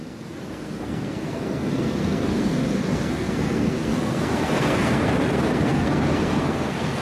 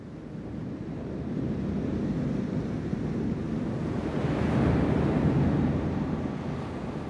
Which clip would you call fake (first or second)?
first